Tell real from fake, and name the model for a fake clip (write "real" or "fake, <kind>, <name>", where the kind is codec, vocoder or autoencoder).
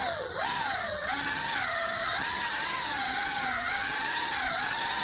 fake, vocoder, HiFi-GAN